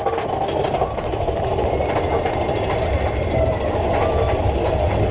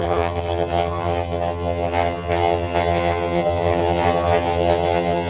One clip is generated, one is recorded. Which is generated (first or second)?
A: second